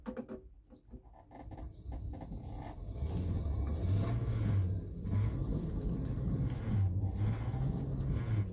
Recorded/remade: recorded